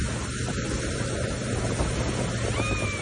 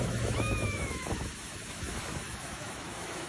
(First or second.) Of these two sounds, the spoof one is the second